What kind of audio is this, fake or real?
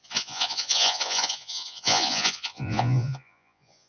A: fake